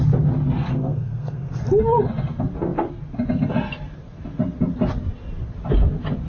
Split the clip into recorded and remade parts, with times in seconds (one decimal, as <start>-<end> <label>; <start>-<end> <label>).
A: 0.0-0.7 recorded; 0.7-1.6 remade; 1.6-6.3 recorded